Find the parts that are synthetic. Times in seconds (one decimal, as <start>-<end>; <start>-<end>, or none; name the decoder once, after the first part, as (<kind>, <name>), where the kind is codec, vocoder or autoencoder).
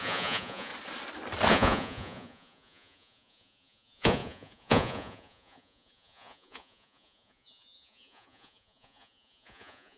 0.0-0.7 (vocoder, Vocos); 1.5-10.0